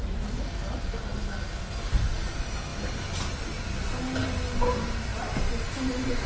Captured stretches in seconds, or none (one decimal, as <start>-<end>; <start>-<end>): 1.1-1.8; 2.7-3.9